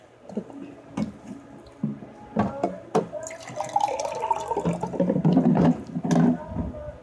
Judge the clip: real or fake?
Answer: real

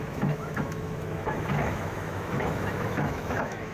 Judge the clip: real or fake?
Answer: fake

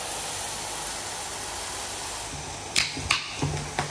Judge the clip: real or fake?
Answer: real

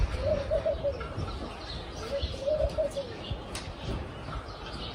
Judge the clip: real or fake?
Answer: real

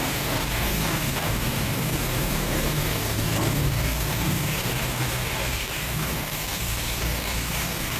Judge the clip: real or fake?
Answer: fake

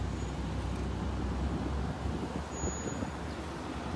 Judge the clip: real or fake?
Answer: real